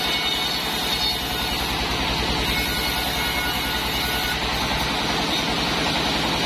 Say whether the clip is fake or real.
real